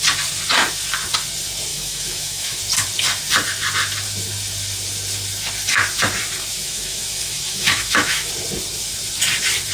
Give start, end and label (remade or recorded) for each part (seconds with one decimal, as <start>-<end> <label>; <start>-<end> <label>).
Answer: 0.0-1.7 recorded; 1.7-2.6 remade; 2.6-6.5 recorded; 6.5-8.3 remade; 8.3-9.7 recorded